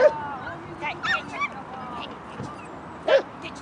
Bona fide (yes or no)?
yes